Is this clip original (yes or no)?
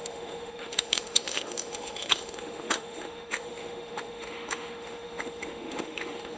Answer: no